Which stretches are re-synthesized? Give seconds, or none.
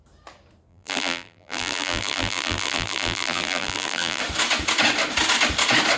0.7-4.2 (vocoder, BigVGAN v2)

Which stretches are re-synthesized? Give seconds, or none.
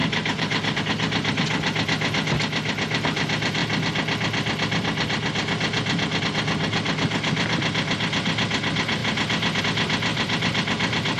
0.0-0.8 (vocoder, BigVGAN v2); 10.1-11.2